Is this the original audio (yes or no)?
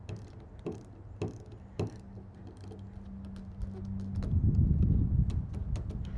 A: yes